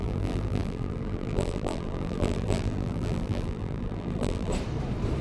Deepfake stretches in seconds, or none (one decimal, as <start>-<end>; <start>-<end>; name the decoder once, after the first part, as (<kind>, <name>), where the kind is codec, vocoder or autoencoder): 0.0-4.5 (vocoder, BigVGAN v2)